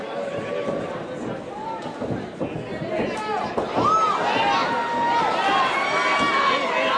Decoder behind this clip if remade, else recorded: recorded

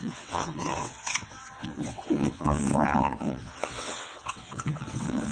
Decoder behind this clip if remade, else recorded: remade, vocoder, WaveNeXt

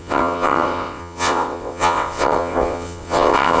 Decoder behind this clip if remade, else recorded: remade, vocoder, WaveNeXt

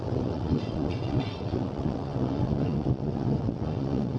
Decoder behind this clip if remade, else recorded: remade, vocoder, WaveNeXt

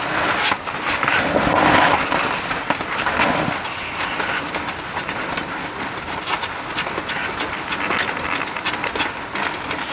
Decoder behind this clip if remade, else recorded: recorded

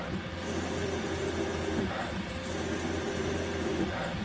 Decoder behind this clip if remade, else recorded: recorded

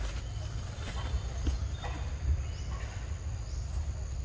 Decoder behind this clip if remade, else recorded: recorded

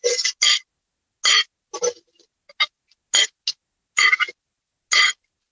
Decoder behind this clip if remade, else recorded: recorded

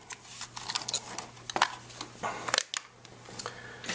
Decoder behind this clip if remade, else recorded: recorded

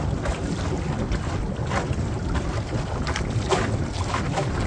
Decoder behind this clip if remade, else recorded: recorded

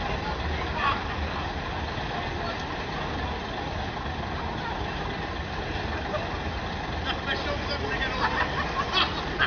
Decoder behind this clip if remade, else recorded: recorded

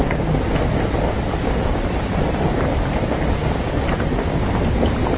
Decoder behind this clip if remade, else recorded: recorded